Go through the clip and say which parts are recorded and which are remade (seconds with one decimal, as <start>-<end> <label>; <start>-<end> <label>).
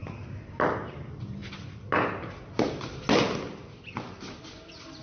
0.0-5.0 recorded